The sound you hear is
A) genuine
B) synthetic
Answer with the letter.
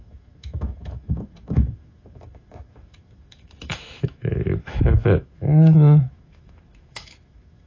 B